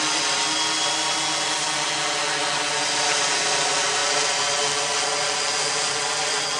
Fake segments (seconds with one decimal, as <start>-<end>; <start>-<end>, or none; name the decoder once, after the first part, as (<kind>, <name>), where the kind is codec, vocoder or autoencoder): none